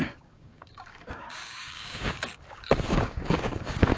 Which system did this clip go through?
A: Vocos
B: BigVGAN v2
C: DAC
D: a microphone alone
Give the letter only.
C